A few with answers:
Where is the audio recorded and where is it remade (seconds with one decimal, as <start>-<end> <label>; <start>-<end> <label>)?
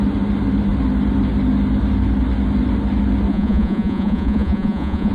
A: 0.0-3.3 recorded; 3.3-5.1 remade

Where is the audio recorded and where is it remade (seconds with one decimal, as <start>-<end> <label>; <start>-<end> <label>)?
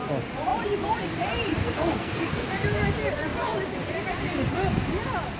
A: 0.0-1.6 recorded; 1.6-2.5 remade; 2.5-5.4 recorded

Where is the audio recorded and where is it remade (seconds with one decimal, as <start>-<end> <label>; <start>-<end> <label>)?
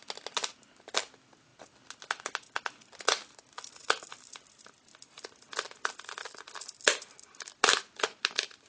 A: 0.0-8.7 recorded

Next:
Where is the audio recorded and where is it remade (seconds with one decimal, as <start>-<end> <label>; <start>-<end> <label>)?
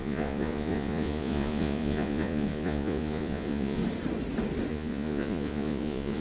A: 0.0-3.8 remade; 3.8-4.7 recorded; 4.7-6.2 remade